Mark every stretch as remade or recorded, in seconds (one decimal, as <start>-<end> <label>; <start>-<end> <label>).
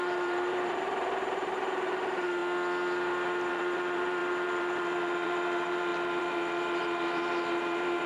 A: 0.0-2.4 remade; 2.4-3.5 recorded; 3.5-8.1 remade